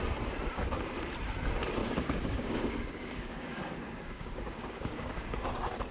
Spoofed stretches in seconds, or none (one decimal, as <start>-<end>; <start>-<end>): 1.8-5.3